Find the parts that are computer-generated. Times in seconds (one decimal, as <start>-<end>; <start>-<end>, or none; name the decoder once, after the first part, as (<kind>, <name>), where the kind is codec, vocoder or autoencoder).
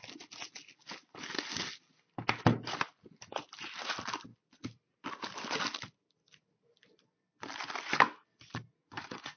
8.8-9.4 (vocoder, Vocos)